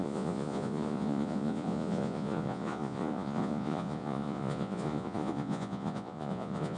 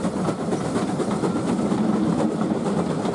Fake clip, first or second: first